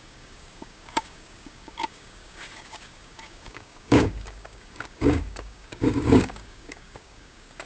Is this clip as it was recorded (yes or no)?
no